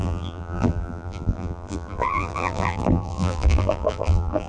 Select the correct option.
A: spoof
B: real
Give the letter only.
A